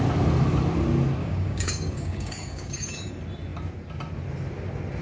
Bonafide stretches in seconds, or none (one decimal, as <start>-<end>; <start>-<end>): 0.0-1.2; 3.1-5.0